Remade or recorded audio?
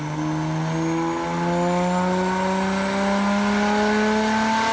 recorded